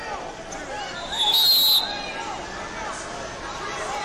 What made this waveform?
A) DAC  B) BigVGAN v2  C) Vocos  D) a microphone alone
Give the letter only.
D